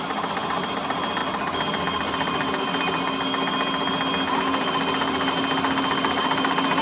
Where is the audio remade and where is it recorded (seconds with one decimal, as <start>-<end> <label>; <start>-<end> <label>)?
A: 0.0-6.8 recorded